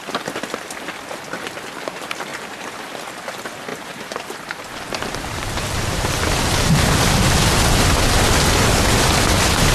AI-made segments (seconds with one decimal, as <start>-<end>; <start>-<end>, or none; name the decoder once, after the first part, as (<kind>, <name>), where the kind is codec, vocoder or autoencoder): 2.3-2.8 (vocoder, BigVGAN v2); 3.7-6.3